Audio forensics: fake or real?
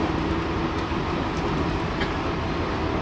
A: real